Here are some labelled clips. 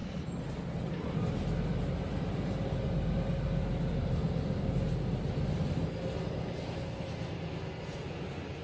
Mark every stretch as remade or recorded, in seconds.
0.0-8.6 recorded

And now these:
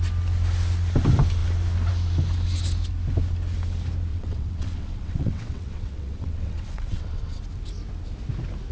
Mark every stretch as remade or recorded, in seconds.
0.0-4.1 recorded; 4.1-7.4 remade; 7.4-8.7 recorded